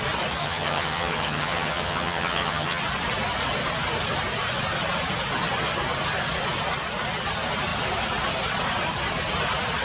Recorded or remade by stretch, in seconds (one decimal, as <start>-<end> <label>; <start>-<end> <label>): 0.0-0.4 recorded; 0.4-2.8 remade; 2.8-9.8 recorded